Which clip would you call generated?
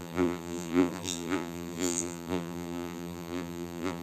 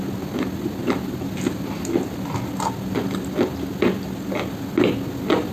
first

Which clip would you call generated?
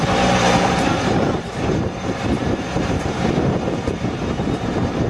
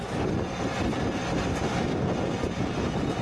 first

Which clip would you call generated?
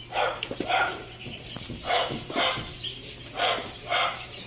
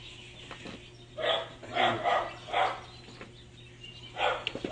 first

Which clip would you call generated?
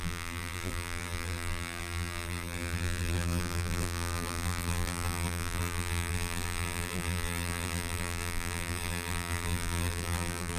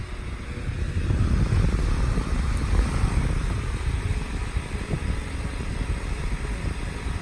first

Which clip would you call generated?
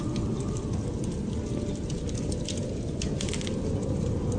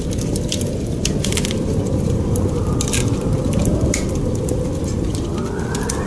second